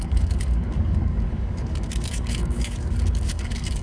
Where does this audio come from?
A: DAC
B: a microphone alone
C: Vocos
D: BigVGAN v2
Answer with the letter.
A